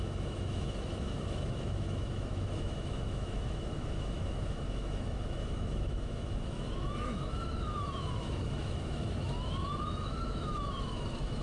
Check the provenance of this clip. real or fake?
fake